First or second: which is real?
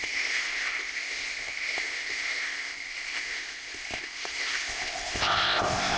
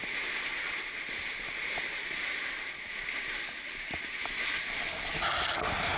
second